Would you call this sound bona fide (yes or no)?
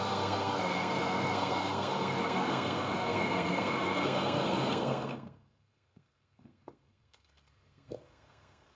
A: no